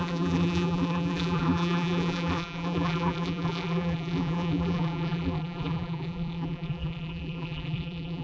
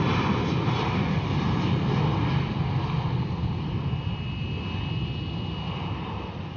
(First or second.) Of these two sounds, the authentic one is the second